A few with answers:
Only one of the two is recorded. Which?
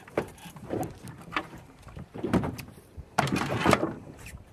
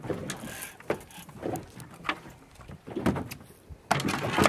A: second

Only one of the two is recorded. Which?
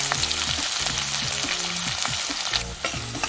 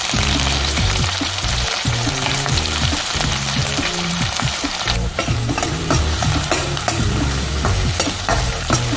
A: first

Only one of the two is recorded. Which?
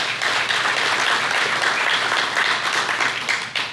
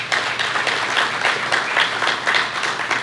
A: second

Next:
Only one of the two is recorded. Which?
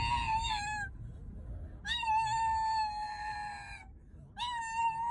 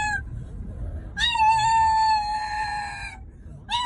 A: first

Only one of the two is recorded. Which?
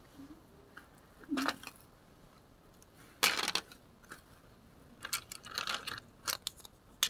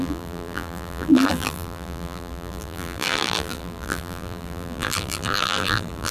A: first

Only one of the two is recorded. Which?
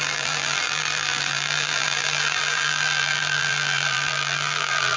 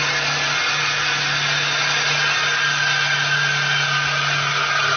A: second